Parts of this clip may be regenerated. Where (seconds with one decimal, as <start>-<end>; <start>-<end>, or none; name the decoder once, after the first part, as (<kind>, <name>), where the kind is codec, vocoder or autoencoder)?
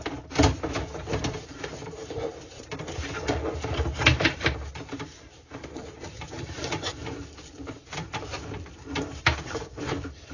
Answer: 1.4-10.3 (vocoder, BigVGAN v2)